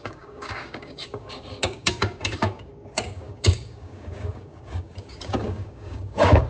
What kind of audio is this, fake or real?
fake